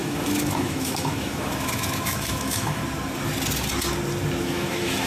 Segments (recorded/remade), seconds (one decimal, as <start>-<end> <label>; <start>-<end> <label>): 0.0-2.8 remade; 2.8-4.4 recorded; 4.4-5.1 remade